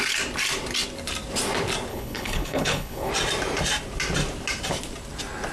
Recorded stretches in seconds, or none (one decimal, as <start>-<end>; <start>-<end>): 0.0-1.9; 3.1-5.5